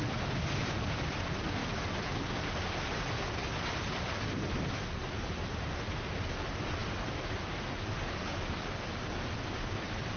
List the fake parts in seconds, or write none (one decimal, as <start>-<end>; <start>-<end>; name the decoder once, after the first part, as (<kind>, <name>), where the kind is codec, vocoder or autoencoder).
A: none